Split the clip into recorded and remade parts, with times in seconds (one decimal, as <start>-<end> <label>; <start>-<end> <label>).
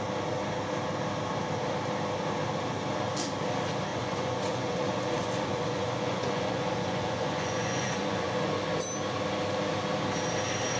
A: 0.0-3.9 recorded; 3.9-8.5 remade; 8.5-10.8 recorded